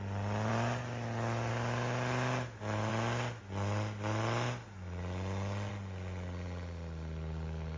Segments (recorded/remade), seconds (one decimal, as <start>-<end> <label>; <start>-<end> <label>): 0.0-7.8 recorded